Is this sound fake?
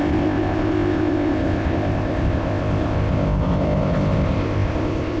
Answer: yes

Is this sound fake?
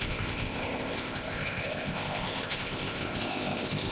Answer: yes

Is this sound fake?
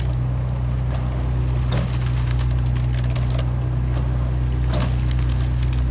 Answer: no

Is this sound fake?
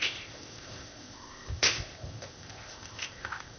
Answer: yes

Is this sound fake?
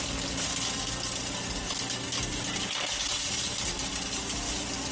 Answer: no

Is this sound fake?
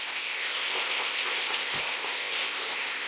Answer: yes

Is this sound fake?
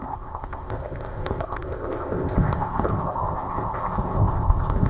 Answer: yes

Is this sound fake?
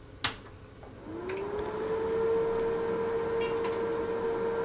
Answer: no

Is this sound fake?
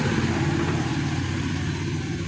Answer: no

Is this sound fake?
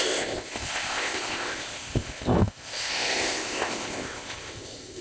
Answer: yes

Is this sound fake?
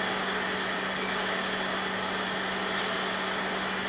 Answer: no